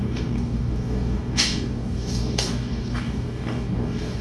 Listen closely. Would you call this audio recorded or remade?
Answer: remade